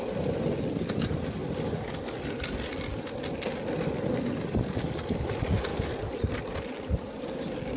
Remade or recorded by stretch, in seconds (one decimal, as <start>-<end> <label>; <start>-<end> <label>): 0.0-7.8 recorded